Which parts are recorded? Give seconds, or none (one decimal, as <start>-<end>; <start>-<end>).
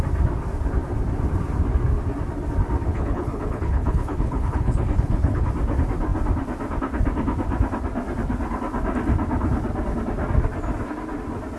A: 0.0-2.9; 5.5-11.6